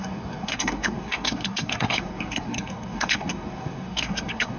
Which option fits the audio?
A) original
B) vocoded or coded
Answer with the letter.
B